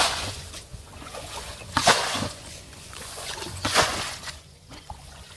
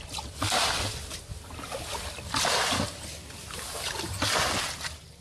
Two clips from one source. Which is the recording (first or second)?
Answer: second